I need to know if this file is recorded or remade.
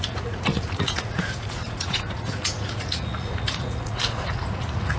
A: remade